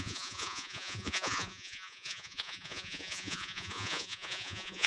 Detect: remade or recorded remade